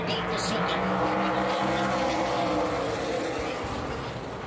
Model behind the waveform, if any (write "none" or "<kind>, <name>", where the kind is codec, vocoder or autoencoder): none